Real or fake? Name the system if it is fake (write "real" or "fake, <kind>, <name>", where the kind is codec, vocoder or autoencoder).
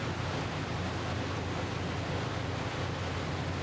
real